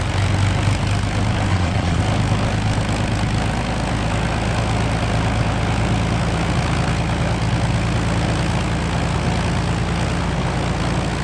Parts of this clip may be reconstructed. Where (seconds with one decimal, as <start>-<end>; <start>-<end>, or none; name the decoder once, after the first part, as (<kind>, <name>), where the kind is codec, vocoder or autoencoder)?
1.5-2.0 (vocoder, Vocos)